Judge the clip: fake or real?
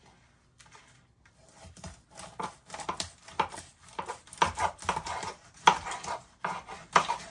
real